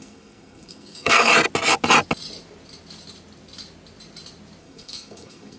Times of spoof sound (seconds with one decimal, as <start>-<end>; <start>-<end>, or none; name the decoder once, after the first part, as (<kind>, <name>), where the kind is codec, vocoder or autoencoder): 0.0-1.3 (codec, SNAC); 4.6-5.6